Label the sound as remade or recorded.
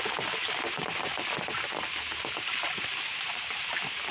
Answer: recorded